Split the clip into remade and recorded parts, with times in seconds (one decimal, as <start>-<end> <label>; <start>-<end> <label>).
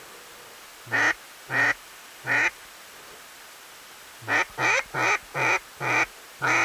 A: 0.0-6.6 recorded